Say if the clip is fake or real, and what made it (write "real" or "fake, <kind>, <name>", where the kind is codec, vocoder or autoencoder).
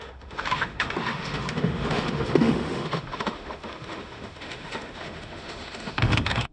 fake, autoencoder, DAC-VAE